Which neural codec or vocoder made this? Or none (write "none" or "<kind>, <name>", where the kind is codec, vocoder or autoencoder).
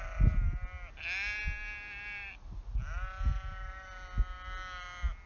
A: none